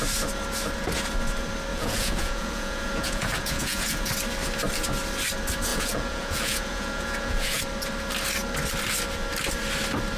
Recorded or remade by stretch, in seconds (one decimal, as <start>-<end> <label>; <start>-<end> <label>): 0.0-1.7 recorded; 1.7-4.1 remade; 4.1-5.7 recorded; 5.7-7.6 remade; 7.6-10.2 recorded